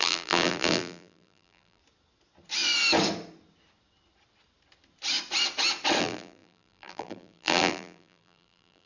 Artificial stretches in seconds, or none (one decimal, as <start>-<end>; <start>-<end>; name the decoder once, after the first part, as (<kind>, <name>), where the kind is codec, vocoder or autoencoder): 0.0-1.8 (vocoder, BigVGAN v2); 6.0-8.9